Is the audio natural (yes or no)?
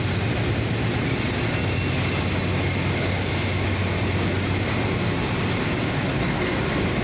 yes